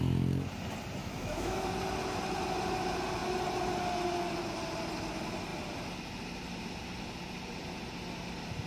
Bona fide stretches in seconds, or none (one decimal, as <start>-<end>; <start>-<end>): 0.0-1.0; 1.7-8.7